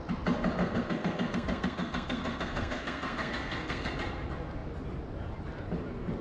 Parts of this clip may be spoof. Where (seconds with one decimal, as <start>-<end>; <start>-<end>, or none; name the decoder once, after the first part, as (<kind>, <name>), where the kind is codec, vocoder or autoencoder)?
0.6-3.9 (codec, SNAC)